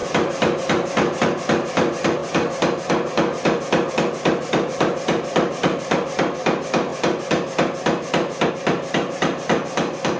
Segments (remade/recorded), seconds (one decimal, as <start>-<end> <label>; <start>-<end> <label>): 0.0-2.2 remade; 2.2-3.9 recorded; 3.9-6.9 remade; 6.9-8.5 recorded; 8.5-10.2 remade